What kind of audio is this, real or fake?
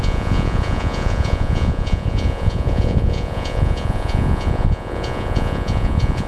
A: fake